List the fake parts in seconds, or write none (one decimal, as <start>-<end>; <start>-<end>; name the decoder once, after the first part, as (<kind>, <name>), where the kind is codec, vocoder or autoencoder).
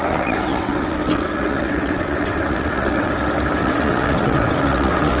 0.0-3.1 (vocoder, WaveNeXt); 3.6-5.2